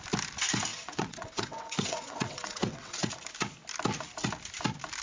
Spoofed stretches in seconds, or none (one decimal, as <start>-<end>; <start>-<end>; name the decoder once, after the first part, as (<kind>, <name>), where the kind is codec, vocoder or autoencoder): 0.7-3.1 (vocoder, WaveNeXt)

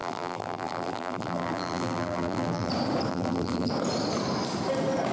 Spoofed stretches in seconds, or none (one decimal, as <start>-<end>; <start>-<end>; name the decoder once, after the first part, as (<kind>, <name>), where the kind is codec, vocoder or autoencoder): 0.0-2.7 (vocoder, BigVGAN v2); 3.1-3.7

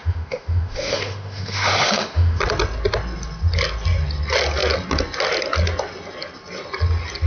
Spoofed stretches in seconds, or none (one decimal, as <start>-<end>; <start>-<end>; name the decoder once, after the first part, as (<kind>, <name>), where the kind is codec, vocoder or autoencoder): 0.0-2.4 (autoencoder, DAC-VAE)

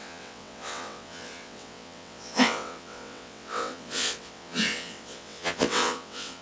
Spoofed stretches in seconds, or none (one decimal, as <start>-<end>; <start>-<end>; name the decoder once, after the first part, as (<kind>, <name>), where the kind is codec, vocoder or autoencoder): 0.0-6.4 (vocoder, WaveNeXt)

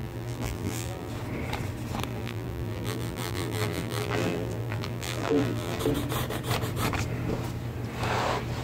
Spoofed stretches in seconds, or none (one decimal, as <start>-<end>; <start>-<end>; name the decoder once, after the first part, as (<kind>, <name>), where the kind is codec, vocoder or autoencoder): 0.0-1.1 (vocoder, BigVGAN v2); 2.1-5.8